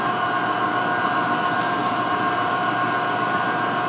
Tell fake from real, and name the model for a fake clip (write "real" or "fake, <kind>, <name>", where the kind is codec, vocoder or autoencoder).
fake, vocoder, BigVGAN v2